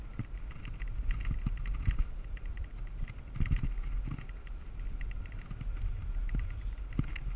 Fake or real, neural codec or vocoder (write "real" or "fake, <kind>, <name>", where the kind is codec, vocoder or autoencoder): real